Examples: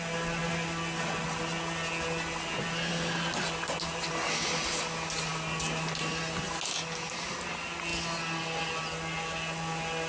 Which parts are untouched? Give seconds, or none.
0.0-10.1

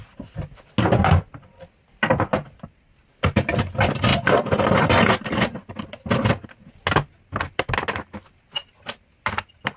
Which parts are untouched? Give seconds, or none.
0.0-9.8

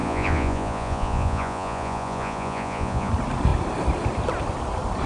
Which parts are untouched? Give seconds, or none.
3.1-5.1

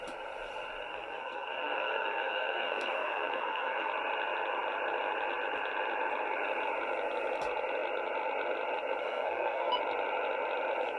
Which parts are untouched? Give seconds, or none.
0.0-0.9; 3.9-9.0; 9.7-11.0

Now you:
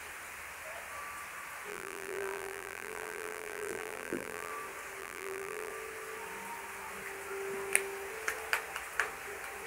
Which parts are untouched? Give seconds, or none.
0.0-1.7; 4.5-5.0; 5.7-9.7